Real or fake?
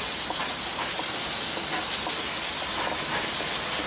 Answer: real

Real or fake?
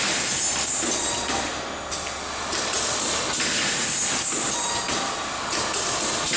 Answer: real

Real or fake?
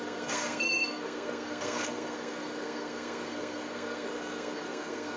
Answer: fake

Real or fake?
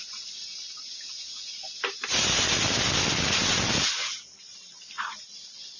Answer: real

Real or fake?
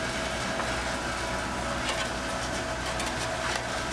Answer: real